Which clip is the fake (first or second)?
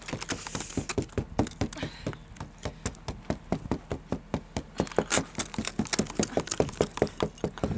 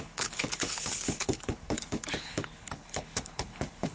second